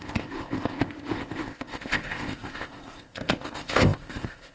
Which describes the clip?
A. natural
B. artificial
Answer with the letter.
B